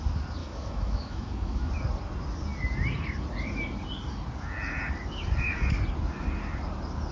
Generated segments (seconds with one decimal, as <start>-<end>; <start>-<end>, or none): 0.4-1.7